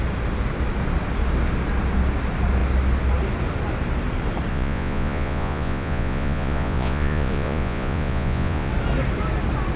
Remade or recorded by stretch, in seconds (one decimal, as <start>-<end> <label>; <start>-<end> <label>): 0.0-4.5 recorded; 4.5-8.7 remade; 8.7-9.8 recorded